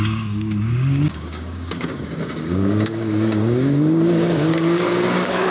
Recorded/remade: remade